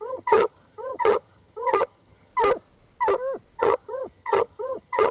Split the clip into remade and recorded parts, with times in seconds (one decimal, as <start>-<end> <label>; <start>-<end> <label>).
0.0-2.3 remade; 2.3-3.6 recorded; 3.6-5.1 remade

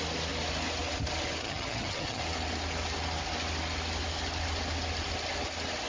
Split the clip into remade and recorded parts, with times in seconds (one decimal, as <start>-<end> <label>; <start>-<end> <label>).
0.0-1.4 recorded; 1.4-2.2 remade; 2.2-5.9 recorded

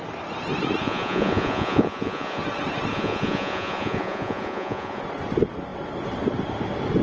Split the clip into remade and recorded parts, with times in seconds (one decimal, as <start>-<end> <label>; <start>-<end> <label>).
0.0-0.8 recorded; 0.8-2.4 remade; 2.4-2.9 recorded; 2.9-5.0 remade; 5.0-7.0 recorded

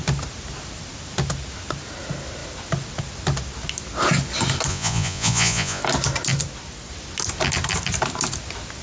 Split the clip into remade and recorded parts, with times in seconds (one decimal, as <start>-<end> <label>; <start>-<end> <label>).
0.0-4.7 recorded; 4.7-5.8 remade; 5.8-8.8 recorded

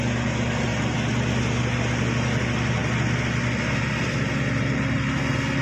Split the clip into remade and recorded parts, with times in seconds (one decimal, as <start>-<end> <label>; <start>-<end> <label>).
0.0-5.6 recorded

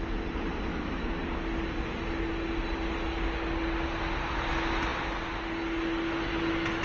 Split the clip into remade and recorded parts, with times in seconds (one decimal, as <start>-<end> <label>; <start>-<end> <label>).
0.0-0.7 recorded; 0.7-1.2 remade; 1.2-6.8 recorded

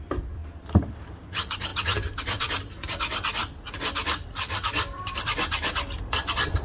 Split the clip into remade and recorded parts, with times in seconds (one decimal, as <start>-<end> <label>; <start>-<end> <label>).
0.0-1.7 remade; 1.7-2.2 recorded; 2.2-6.6 remade